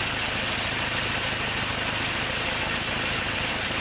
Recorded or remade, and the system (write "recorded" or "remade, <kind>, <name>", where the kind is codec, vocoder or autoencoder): recorded